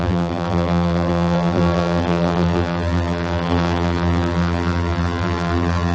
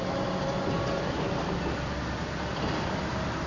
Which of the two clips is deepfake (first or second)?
first